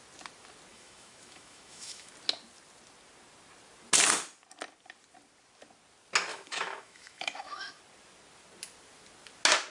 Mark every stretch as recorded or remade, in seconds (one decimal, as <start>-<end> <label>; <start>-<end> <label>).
0.0-0.7 recorded; 0.7-2.1 remade; 2.1-6.3 recorded; 6.3-7.8 remade; 7.8-9.7 recorded